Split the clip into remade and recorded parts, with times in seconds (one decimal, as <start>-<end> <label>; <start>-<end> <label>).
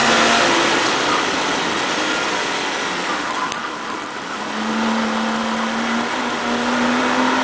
0.0-7.4 recorded